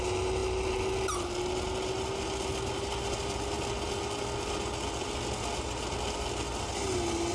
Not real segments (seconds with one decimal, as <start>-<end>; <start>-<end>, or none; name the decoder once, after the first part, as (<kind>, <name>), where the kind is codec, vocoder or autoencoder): none